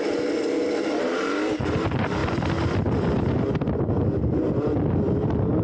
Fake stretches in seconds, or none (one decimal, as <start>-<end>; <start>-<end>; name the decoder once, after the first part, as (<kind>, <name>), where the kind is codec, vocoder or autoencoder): none